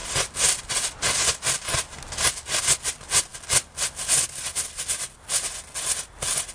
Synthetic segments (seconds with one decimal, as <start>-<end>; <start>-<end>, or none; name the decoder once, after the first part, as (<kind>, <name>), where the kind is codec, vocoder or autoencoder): none